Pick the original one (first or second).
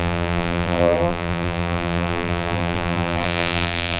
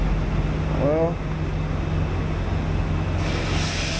second